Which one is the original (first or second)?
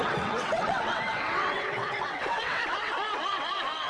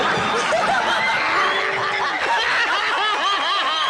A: second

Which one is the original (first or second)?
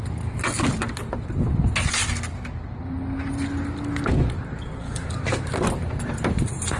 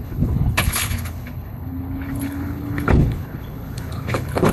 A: first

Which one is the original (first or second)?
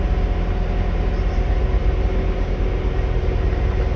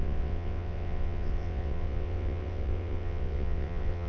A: first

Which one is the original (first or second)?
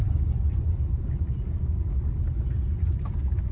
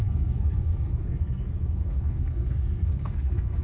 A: first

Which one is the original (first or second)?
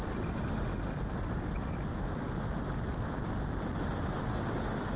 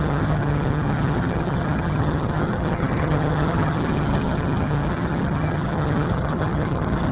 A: first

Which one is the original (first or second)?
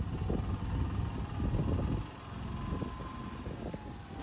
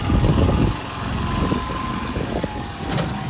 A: first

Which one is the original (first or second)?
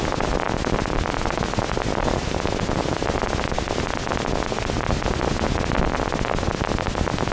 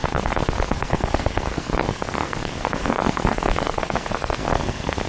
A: first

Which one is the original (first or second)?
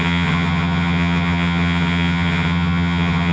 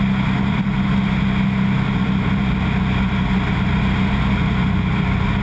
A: second